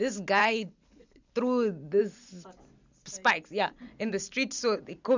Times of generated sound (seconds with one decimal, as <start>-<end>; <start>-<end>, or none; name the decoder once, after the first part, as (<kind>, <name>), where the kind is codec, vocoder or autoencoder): 0.4-1.3 (codec, HILCodec)